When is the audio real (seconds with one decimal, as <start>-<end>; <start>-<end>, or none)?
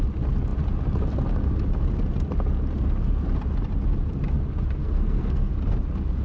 0.0-4.8; 5.5-6.2